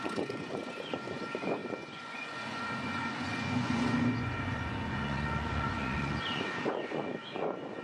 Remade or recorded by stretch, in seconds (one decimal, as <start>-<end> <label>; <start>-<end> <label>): 0.0-7.8 remade